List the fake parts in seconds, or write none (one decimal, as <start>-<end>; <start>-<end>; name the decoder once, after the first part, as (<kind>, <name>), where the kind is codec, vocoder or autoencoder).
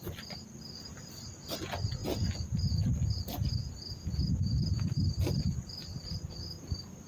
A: none